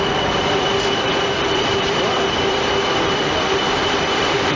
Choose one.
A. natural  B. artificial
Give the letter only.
B